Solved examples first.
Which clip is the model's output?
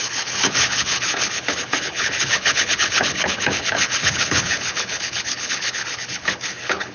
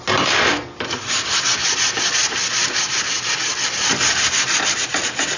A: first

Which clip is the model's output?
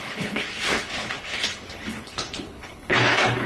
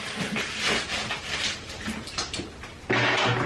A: first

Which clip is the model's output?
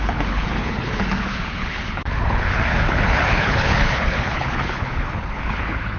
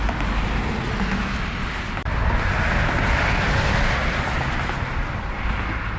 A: first